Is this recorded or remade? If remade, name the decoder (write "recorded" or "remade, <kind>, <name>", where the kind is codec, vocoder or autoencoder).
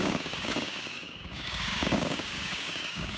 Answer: remade, codec, DAC